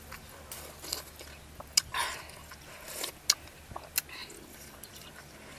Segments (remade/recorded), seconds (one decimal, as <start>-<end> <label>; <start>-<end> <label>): 0.0-5.6 recorded